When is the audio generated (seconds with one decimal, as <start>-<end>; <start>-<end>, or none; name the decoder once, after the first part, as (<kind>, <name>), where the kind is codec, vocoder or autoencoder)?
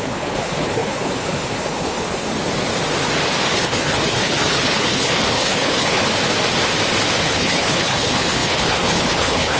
0.0-2.3 (codec, HILCodec); 3.5-6.1; 7.2-9.6